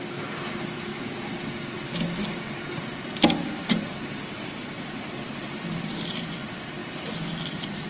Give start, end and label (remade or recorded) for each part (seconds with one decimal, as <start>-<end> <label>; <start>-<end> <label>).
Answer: 0.0-7.9 recorded